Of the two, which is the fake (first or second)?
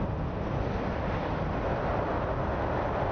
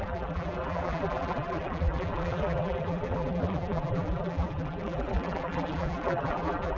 second